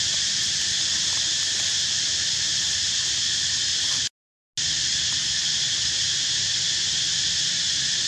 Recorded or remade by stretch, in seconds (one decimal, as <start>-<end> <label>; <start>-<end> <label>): 0.0-8.1 recorded